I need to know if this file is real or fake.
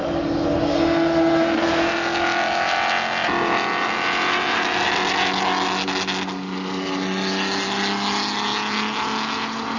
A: real